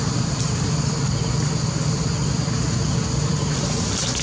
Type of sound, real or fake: real